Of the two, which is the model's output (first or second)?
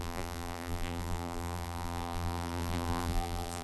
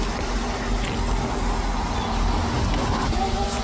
first